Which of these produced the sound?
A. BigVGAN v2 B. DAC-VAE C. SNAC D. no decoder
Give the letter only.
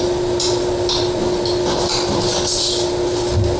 D